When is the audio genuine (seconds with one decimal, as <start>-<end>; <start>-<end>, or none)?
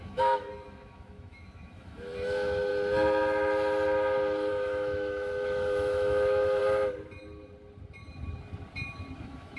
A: 2.7-4.5; 6.6-9.2